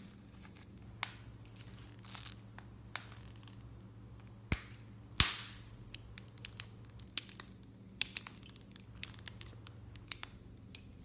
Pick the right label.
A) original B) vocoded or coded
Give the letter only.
A